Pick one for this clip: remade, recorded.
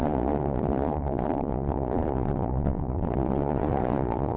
remade